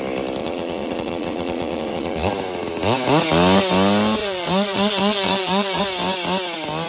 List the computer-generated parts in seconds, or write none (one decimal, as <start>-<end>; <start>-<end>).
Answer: 0.4-2.3; 4.2-5.8